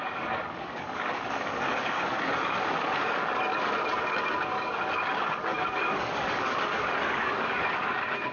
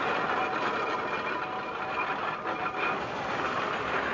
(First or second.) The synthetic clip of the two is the first